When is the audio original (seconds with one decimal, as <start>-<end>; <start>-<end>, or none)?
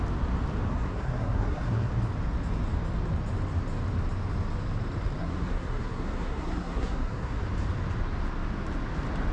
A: 0.0-0.7; 1.9-5.2; 7.4-9.3